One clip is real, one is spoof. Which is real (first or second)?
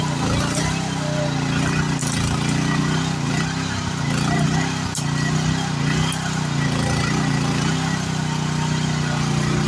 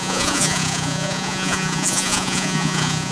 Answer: first